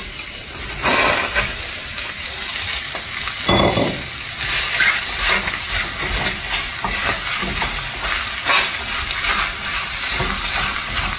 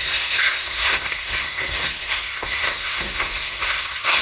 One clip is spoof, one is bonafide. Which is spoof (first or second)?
second